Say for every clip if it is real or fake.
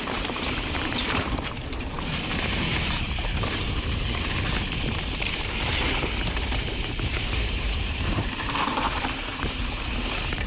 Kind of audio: fake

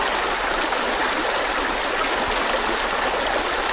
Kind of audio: real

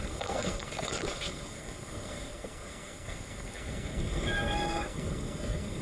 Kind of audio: fake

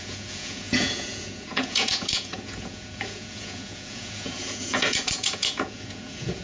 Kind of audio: fake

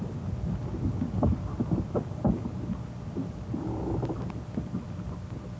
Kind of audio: real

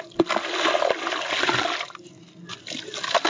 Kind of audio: real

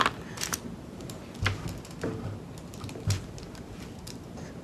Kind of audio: real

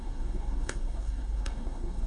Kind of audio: fake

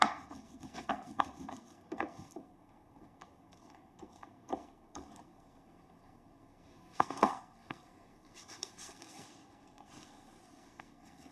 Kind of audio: fake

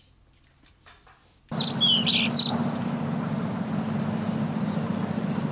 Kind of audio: real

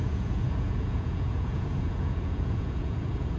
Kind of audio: fake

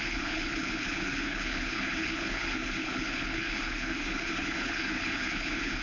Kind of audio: fake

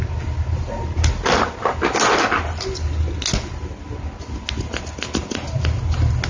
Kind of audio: real